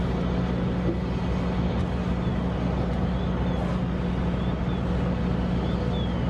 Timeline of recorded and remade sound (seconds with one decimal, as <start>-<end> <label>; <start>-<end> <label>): 0.0-6.3 recorded